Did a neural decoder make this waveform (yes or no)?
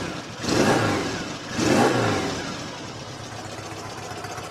no